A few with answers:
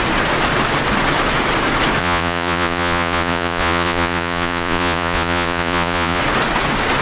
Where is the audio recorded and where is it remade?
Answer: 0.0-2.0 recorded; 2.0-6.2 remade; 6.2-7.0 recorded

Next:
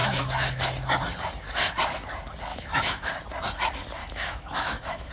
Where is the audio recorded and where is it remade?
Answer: 0.0-0.6 remade; 0.6-2.5 recorded; 2.5-3.1 remade; 3.1-4.0 recorded; 4.0-5.1 remade

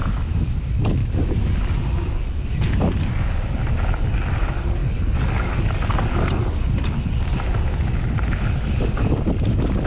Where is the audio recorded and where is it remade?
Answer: 0.0-0.6 remade; 0.6-1.0 recorded; 1.0-1.6 remade; 1.6-4.8 recorded; 4.8-6.3 remade; 6.3-9.9 recorded

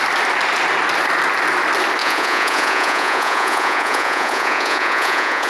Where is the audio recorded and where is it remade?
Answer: 0.0-2.0 recorded; 2.0-5.5 remade

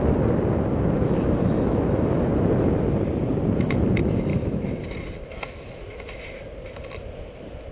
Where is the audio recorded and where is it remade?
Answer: 0.0-0.7 recorded; 0.7-2.2 remade; 2.2-4.3 recorded; 4.3-4.8 remade; 4.8-7.7 recorded

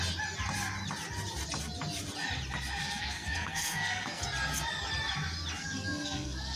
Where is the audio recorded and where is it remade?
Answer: 0.0-2.8 recorded; 2.8-4.2 remade; 4.2-5.6 recorded; 5.6-6.6 remade

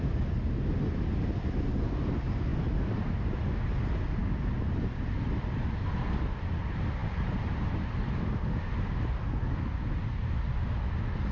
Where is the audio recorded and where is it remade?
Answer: 0.0-2.5 recorded; 2.5-3.4 remade; 3.4-11.3 recorded